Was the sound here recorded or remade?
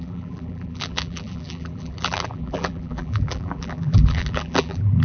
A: remade